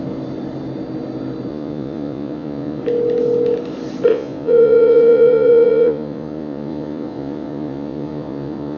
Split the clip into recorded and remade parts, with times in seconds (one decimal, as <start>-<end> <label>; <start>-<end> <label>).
0.0-1.5 recorded; 1.5-2.8 remade; 2.8-4.1 recorded; 4.1-8.8 remade